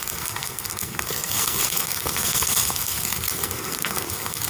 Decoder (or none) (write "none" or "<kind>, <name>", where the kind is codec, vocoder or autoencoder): codec, SNAC